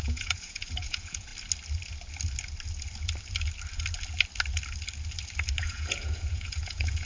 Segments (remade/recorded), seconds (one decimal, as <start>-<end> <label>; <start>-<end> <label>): 0.0-1.3 remade; 1.3-5.6 recorded; 5.6-7.1 remade